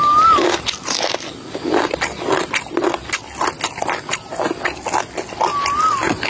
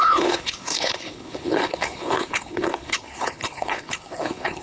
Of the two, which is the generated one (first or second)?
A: second